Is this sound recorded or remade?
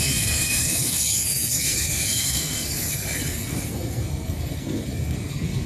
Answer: remade